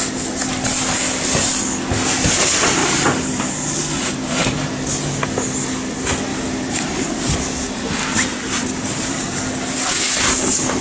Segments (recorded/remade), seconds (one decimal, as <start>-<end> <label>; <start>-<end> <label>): 0.0-2.8 recorded; 2.8-3.4 remade; 3.4-4.0 recorded; 4.0-4.7 remade; 4.7-6.3 recorded; 6.3-7.3 remade; 7.3-8.3 recorded; 8.3-9.4 remade; 9.4-10.8 recorded